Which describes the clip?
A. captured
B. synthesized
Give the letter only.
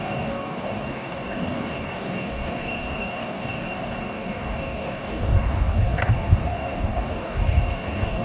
B